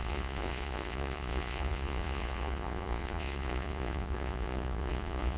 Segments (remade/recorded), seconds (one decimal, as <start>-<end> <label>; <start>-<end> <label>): 0.0-5.4 remade